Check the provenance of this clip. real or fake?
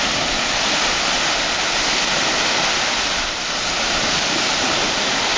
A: real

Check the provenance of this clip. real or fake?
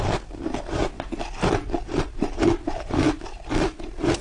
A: real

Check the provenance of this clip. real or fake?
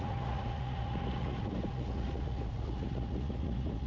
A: fake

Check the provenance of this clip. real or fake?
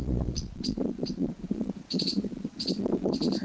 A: fake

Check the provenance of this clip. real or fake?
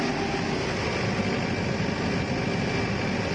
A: real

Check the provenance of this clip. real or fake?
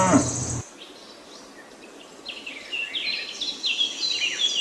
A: real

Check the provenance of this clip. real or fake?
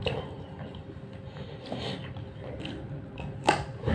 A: real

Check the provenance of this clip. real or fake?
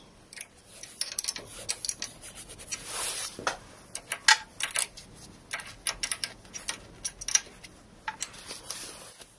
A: real